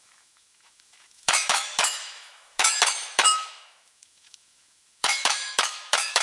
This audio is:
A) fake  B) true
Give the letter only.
A